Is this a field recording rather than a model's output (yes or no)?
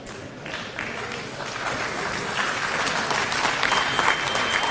yes